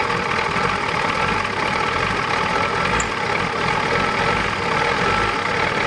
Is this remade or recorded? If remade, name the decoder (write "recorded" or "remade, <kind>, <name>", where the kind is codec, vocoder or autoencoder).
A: recorded